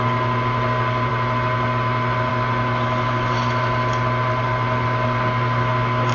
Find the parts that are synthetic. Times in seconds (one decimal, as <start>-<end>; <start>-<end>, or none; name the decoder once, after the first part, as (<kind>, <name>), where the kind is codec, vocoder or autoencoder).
none